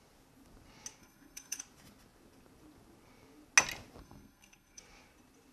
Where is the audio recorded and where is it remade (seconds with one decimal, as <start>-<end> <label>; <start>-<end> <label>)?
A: 0.0-1.0 recorded; 1.0-1.6 remade; 1.6-4.0 recorded; 4.0-4.8 remade; 4.8-5.5 recorded